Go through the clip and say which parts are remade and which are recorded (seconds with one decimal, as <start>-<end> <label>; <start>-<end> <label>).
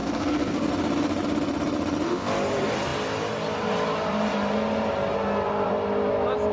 0.0-0.7 remade; 0.7-6.5 recorded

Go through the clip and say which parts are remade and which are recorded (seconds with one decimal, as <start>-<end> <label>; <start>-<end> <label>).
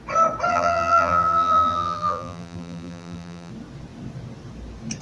0.0-0.5 recorded; 0.5-3.5 remade; 3.5-5.0 recorded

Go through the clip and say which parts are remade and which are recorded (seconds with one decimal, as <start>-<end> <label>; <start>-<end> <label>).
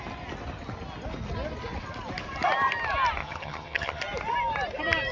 0.0-3.2 recorded; 3.2-4.0 remade; 4.0-5.1 recorded